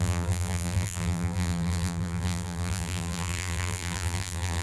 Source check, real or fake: fake